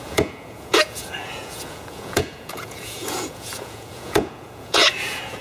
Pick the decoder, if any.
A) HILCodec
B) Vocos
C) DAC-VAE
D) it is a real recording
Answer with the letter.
B